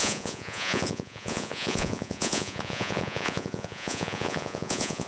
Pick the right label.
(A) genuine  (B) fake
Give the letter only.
B